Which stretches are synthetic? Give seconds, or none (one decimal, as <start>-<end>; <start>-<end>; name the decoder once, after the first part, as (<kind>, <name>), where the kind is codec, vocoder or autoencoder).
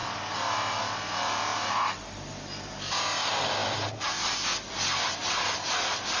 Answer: none